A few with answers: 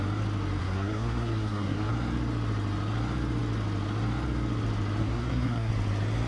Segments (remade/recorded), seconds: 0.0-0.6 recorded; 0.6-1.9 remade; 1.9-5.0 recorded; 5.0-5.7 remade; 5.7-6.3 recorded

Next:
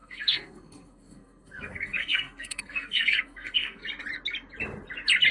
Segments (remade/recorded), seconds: 0.0-3.8 remade; 3.8-5.3 recorded

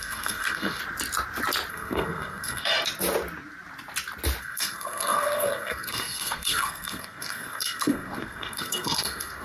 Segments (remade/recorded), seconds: 0.0-0.8 remade; 0.8-1.7 recorded; 1.7-2.7 remade; 2.7-4.4 recorded; 4.4-9.4 remade

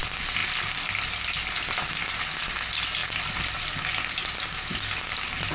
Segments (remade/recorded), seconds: 0.0-5.5 recorded

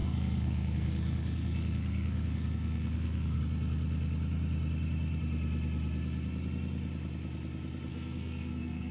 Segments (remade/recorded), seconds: 0.0-3.4 remade; 3.4-7.9 recorded; 7.9-8.9 remade

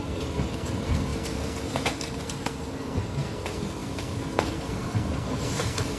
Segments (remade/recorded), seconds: 0.0-6.0 remade

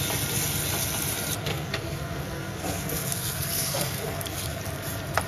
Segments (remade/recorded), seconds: 0.0-1.4 recorded; 1.4-4.6 remade; 4.6-5.3 recorded

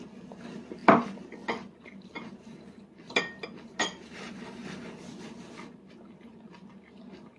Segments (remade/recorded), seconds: 0.0-7.4 recorded